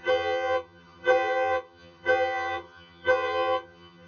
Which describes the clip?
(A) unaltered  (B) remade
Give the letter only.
B